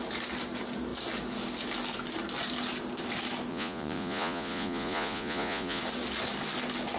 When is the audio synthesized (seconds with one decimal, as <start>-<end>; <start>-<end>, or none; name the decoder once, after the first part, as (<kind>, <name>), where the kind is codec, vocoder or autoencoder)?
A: 3.5-5.8 (vocoder, Vocos)